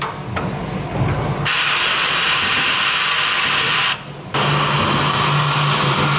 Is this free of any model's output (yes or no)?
yes